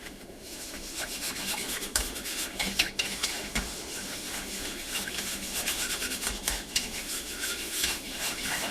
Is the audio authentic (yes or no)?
no